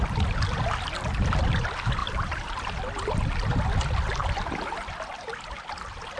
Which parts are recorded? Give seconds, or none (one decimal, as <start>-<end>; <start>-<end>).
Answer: 0.0-2.0; 2.7-6.2